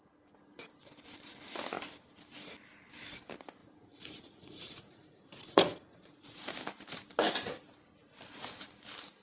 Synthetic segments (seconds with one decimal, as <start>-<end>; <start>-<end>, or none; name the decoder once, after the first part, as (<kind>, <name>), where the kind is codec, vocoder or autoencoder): 3.6-6.4 (vocoder, Vocos)